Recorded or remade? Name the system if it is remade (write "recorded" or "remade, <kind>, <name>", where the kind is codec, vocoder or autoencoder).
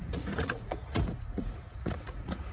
remade, vocoder, Vocos